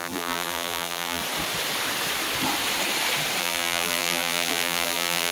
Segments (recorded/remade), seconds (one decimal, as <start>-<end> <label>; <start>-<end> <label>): 0.0-1.2 remade; 1.2-3.4 recorded; 3.4-5.3 remade